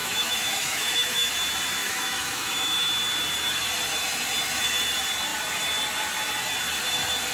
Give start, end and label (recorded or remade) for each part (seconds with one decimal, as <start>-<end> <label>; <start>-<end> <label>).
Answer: 0.0-1.3 remade; 1.3-1.8 recorded; 1.8-2.9 remade; 2.9-7.3 recorded